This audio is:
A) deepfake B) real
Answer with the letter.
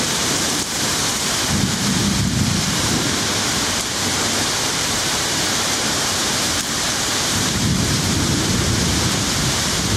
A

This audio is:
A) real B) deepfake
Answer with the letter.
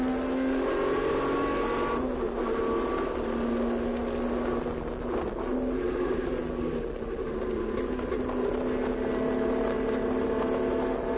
A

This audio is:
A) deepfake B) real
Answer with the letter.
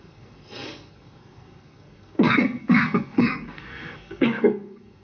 A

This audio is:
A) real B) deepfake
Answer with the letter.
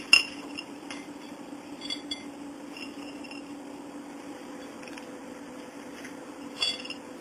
A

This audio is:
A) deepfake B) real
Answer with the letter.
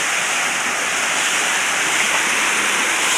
B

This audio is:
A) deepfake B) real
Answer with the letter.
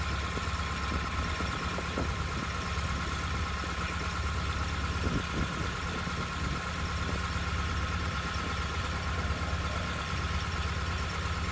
B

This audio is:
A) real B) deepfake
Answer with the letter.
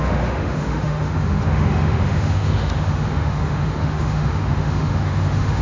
B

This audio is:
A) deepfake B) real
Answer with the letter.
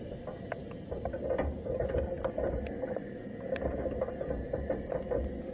B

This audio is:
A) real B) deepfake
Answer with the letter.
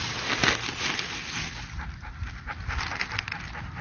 A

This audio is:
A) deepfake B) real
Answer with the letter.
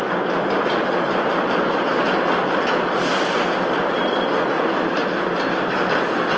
B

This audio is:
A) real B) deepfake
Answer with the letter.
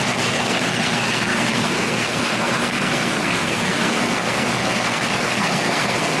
B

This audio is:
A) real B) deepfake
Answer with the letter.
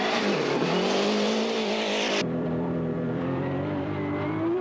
B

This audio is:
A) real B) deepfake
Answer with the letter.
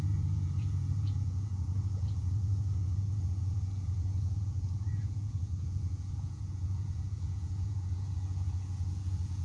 B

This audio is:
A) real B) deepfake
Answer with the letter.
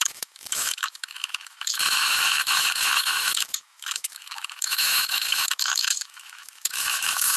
B